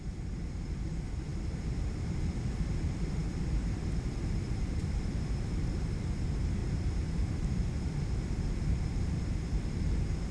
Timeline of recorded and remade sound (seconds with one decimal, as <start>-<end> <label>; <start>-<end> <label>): 0.0-1.3 remade; 1.3-2.5 recorded; 2.5-10.3 remade

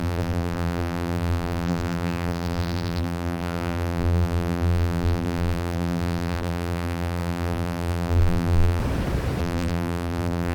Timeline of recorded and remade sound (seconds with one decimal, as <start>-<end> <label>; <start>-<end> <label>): 0.0-8.8 remade; 8.8-9.4 recorded; 9.4-10.5 remade

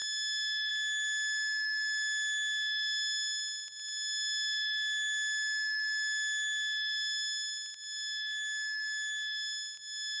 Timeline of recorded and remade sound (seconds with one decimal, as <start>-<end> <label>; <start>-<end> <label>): 0.0-10.2 recorded